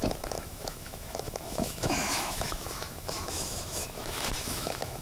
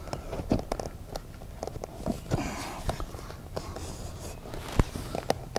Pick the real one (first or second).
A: second